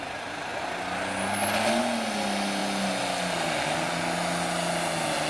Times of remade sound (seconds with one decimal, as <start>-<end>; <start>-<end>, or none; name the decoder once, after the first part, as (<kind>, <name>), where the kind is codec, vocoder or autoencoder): none